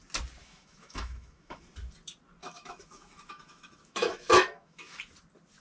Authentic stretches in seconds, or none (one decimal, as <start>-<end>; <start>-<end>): 0.0-0.4; 1.6-2.4; 5.0-5.6